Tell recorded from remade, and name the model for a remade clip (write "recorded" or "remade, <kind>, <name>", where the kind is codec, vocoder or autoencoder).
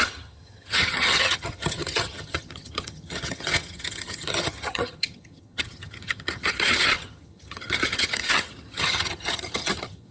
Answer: remade, vocoder, HiFi-GAN